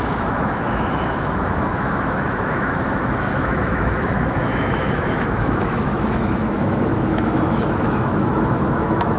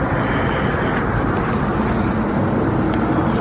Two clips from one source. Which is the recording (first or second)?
second